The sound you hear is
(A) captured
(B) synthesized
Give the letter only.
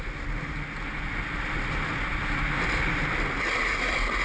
A